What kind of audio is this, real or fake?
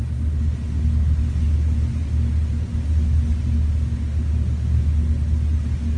real